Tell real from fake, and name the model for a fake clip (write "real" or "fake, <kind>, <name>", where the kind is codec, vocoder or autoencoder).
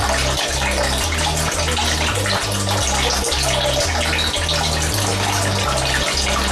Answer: real